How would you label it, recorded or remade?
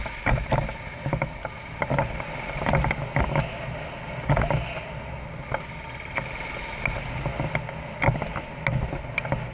recorded